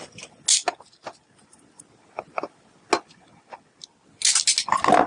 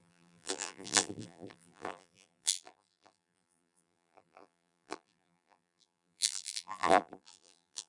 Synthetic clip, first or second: second